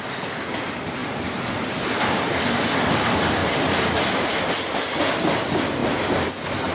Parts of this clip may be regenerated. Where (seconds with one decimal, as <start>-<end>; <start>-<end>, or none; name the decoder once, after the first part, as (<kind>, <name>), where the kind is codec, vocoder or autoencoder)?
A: 1.0-2.6 (vocoder, BigVGAN v2); 3.4-5.0; 5.8-6.7